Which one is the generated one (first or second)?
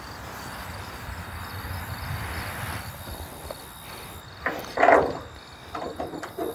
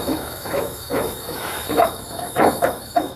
second